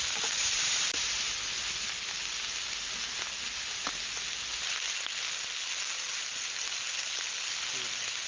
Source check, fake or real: real